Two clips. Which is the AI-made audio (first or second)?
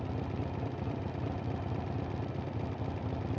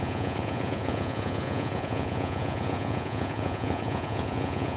second